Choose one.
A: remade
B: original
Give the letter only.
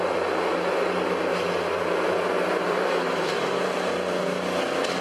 B